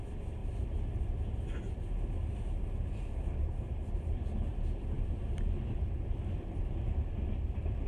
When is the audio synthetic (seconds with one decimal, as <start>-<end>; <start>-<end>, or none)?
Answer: 0.0-0.4; 3.4-4.5; 5.5-7.9